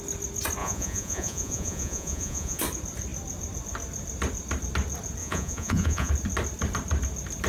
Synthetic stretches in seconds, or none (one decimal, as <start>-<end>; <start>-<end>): 0.6-2.6; 5.2-6.1